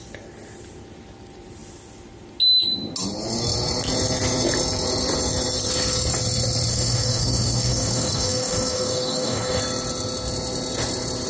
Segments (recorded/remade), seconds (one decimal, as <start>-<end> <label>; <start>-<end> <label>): 0.0-6.7 recorded; 6.7-9.6 remade; 9.6-11.3 recorded